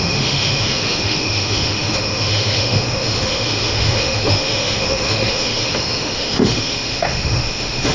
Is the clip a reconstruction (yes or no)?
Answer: yes